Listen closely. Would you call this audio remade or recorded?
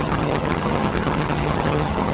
remade